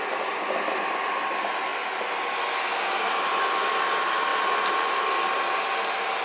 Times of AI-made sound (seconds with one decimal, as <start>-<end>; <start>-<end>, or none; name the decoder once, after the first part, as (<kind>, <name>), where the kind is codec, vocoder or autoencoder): none